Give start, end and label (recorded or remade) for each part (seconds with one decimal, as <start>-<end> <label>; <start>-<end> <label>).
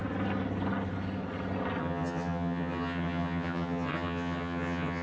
0.0-1.8 recorded; 1.8-5.0 remade